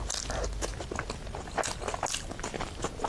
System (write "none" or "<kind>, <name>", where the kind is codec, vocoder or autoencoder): none